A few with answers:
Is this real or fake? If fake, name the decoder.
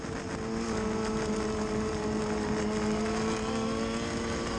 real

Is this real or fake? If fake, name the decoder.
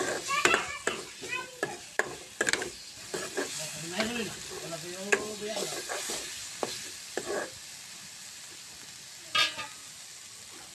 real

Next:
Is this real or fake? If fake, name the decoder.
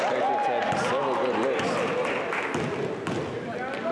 real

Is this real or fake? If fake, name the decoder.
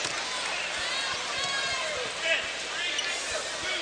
real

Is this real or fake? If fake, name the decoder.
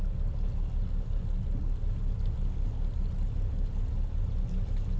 real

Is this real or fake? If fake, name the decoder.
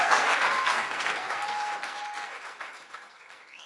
fake, codec, SNAC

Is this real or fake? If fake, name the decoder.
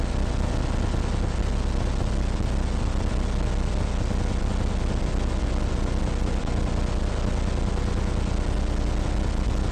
real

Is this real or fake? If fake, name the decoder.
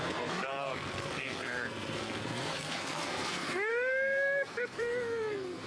fake, codec, SNAC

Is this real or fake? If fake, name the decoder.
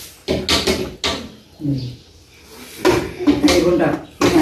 real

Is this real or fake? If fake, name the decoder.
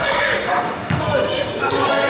fake, codec, SNAC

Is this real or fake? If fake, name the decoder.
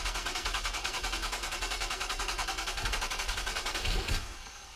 fake, codec, SNAC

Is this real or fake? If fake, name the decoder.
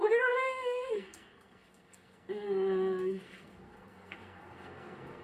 fake, codec, SNAC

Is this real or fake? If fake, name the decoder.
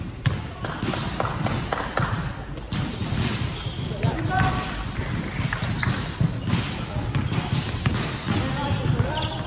real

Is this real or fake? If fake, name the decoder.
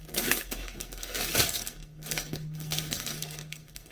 fake, codec, SNAC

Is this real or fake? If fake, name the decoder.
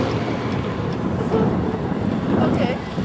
real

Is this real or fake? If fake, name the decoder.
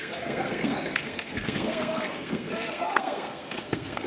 fake, codec, SNAC